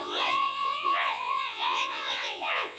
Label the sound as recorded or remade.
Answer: remade